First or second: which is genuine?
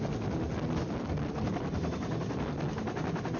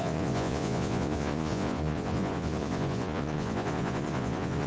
first